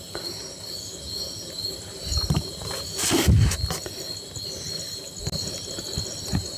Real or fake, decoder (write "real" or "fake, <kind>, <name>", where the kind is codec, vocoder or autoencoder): real